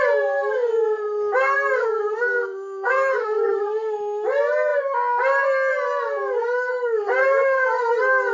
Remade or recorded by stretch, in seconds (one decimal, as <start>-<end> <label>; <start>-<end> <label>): 0.0-1.8 recorded; 1.8-3.6 remade; 3.6-7.2 recorded; 7.2-7.9 remade; 7.9-8.3 recorded